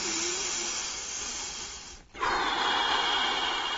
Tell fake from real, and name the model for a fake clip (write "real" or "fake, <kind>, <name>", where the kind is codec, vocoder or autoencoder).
real